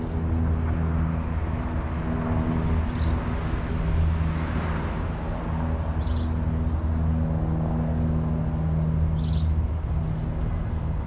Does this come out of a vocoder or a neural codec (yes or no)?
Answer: no